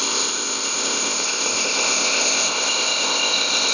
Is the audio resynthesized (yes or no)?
yes